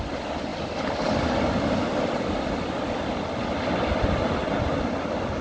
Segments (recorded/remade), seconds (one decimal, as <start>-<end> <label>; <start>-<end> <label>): 0.0-0.5 recorded; 0.5-3.7 remade; 3.7-4.4 recorded; 4.4-5.4 remade